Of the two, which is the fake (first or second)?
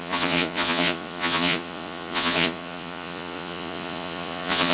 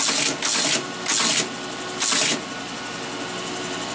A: first